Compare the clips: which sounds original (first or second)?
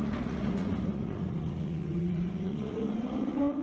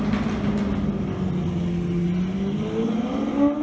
second